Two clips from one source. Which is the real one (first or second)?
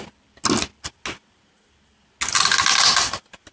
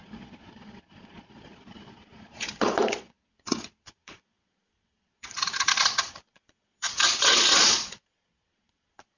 first